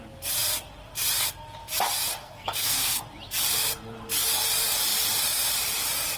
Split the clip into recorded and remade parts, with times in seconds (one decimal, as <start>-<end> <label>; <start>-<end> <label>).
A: 0.0-2.2 recorded; 2.2-3.0 remade; 3.0-6.2 recorded